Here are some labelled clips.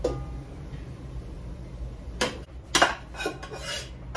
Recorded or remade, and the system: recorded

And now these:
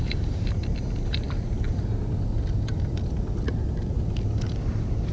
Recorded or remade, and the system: recorded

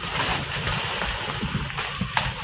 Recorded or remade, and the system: recorded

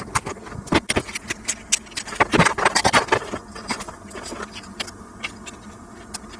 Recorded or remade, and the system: recorded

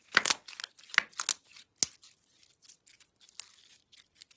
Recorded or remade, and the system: recorded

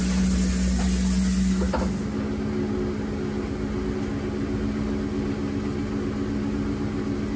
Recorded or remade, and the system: recorded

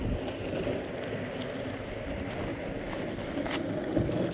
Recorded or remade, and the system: recorded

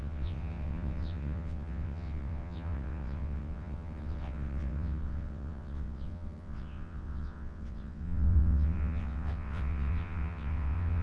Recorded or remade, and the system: remade, vocoder, WaveNeXt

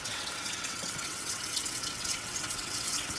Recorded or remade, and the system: remade, vocoder, WaveNeXt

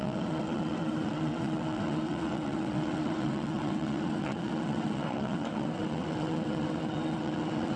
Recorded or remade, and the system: remade, vocoder, WaveNeXt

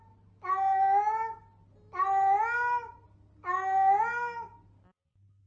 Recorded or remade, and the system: recorded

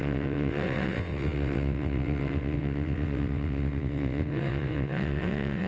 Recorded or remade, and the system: remade, vocoder, WaveNeXt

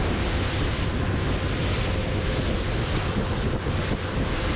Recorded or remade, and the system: recorded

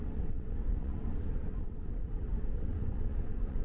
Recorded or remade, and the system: remade, vocoder, WaveNeXt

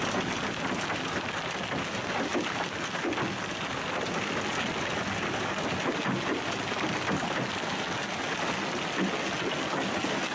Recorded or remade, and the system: recorded